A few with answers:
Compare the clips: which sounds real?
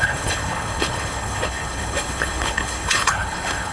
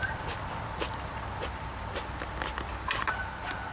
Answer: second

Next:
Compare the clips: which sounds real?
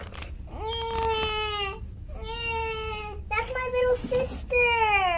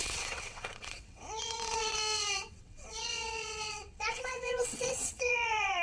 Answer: first